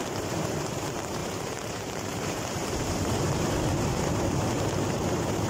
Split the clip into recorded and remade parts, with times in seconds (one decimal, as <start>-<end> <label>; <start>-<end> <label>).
0.0-5.5 remade